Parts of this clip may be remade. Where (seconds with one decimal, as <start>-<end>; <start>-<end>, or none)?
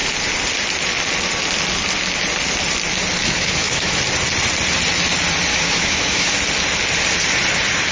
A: 3.2-4.0; 5.5-6.3